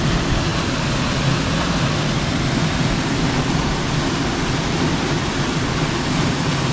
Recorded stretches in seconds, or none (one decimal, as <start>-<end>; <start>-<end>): 0.0-6.7